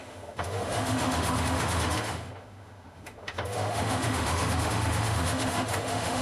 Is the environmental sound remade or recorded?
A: remade